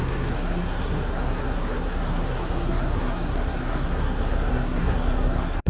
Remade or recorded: remade